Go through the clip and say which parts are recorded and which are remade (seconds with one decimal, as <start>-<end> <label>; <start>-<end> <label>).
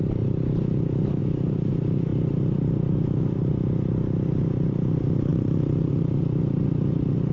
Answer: 0.0-1.2 recorded; 1.2-1.7 remade; 1.7-5.3 recorded; 5.3-5.9 remade; 5.9-7.3 recorded